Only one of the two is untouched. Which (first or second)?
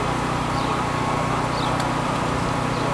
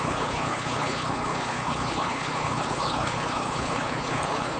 first